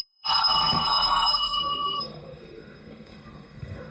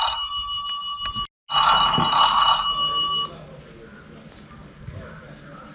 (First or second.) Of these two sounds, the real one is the second